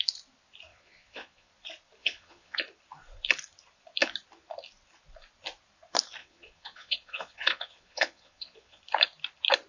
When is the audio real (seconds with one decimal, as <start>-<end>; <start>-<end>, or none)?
0.0-0.7; 1.5-2.0; 2.6-6.2; 8.8-9.7

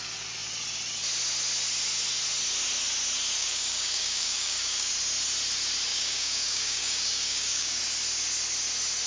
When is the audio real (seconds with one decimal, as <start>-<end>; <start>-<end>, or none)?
0.0-3.4; 4.9-5.9; 7.8-9.1

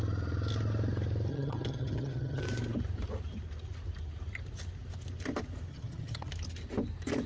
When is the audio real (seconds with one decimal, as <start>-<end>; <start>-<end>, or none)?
0.0-1.3; 2.4-5.7; 6.3-7.3

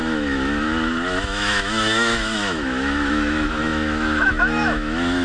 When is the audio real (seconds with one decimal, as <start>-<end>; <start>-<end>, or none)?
none

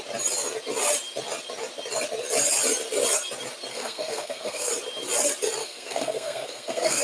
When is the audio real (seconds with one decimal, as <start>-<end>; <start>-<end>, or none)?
0.0-3.7; 4.7-5.6

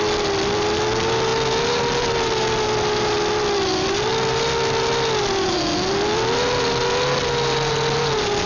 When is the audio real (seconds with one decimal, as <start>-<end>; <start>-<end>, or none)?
0.0-8.5